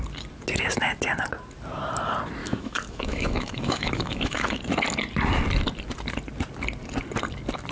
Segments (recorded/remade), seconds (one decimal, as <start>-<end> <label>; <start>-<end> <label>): 0.0-2.4 recorded; 2.4-4.6 remade; 4.6-7.7 recorded